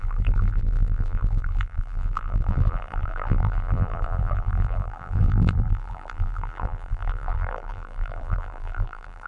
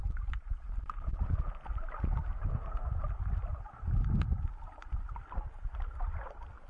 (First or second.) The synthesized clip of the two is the first